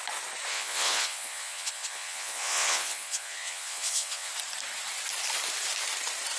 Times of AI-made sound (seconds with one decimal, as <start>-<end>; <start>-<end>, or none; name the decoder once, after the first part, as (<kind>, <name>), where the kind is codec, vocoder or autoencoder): 0.5-4.3 (vocoder, Vocos)